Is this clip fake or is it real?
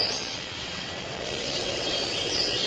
fake